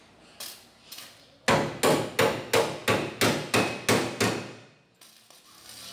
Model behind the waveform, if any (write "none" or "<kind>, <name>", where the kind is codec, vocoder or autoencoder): none